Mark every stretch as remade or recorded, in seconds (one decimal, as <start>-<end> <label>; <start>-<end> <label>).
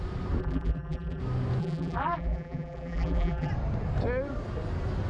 0.0-0.4 recorded; 0.4-1.2 remade; 1.2-1.6 recorded; 1.6-3.5 remade; 3.5-5.1 recorded